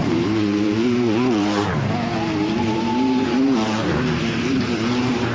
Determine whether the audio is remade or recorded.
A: remade